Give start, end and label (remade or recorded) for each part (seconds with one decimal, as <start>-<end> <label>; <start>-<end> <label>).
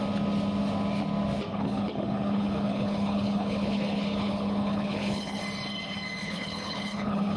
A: 0.0-1.5 recorded; 1.5-5.4 remade; 5.4-6.2 recorded; 6.2-7.4 remade